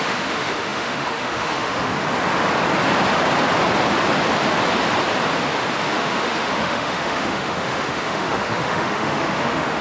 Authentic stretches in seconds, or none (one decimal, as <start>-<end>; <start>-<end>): 1.9-5.8